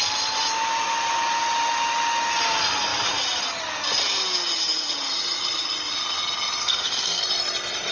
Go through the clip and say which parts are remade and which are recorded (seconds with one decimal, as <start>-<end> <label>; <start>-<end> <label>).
0.0-6.6 recorded; 6.6-7.2 remade; 7.2-7.9 recorded